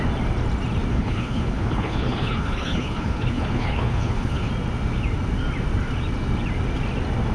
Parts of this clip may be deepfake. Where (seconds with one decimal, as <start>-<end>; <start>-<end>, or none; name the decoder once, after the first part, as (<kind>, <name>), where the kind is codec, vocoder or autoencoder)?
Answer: 0.9-4.5 (codec, HILCodec)